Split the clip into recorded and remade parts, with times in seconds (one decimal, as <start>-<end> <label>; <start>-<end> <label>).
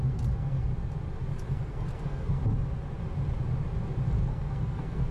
0.0-0.7 remade; 0.7-1.5 recorded; 1.5-2.4 remade; 2.4-4.3 recorded; 4.3-5.1 remade